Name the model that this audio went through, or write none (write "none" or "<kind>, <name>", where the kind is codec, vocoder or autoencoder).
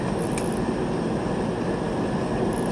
none